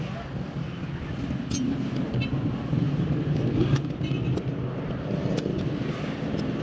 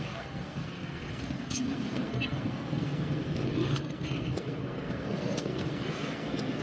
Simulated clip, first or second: second